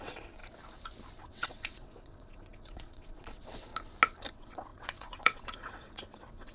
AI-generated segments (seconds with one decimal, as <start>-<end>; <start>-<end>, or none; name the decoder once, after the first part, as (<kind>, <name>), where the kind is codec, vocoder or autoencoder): 0.0-0.4 (vocoder, WaveNeXt); 1.2-3.7; 4.3-6.5